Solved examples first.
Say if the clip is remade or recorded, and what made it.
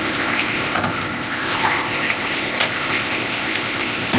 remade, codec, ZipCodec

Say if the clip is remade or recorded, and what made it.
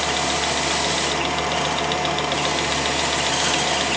recorded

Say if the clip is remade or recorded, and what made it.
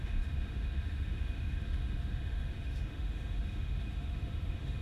remade, autoencoder, DAC-VAE